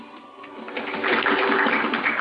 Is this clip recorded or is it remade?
recorded